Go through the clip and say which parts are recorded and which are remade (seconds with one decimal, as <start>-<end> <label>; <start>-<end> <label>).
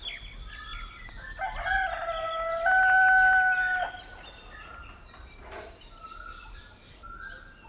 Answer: 0.0-7.7 recorded